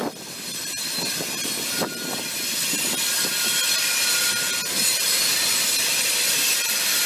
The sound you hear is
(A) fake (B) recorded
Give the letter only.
A